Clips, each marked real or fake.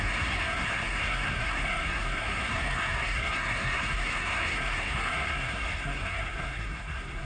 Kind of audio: fake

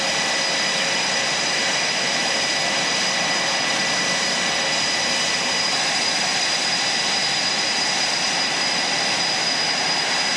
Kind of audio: real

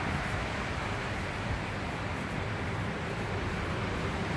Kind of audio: fake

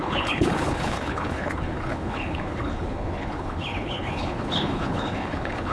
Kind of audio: fake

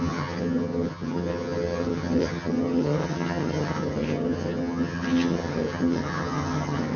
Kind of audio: fake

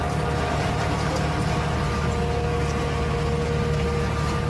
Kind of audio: real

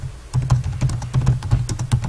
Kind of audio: real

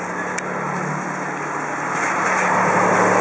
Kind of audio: real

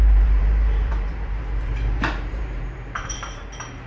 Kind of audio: fake